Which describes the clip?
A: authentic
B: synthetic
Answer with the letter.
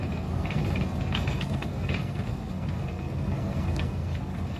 B